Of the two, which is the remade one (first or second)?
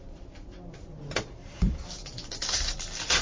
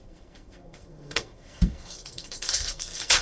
second